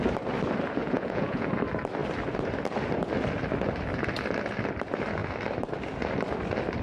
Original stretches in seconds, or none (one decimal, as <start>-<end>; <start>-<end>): 0.0-0.8; 1.5-6.8